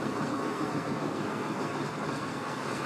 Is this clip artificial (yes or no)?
yes